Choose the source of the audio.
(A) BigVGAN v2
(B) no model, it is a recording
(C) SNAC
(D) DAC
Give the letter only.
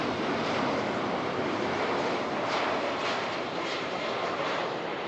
A